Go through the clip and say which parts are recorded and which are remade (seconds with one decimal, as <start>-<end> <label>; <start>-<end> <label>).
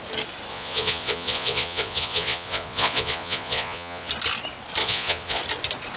0.0-0.5 recorded; 0.5-4.1 remade; 4.1-4.8 recorded; 4.8-5.4 remade; 5.4-6.0 recorded